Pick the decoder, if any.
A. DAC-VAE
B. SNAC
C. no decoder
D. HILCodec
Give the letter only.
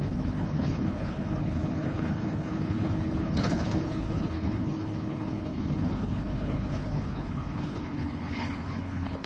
D